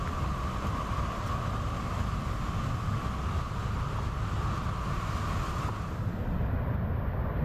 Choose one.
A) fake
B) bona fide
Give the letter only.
B